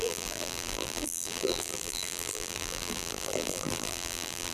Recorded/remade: remade